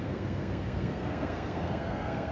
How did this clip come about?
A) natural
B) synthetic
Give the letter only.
B